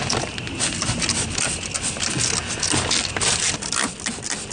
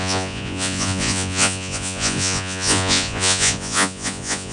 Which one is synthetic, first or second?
second